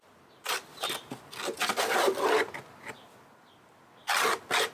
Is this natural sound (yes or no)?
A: yes